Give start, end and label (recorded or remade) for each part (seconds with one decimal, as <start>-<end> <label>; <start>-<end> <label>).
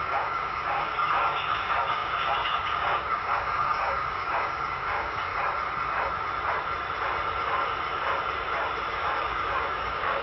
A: 0.0-5.3 remade; 5.3-8.9 recorded; 8.9-10.2 remade